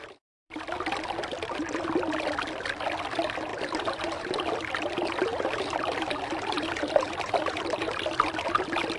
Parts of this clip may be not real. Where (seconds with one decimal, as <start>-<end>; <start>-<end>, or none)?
0.0-0.6; 3.5-4.5; 5.3-7.9